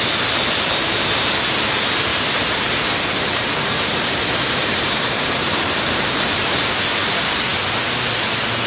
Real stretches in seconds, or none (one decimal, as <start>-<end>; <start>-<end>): 0.0-2.1; 6.6-8.7